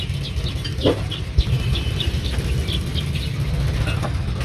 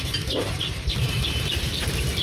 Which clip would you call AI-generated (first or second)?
second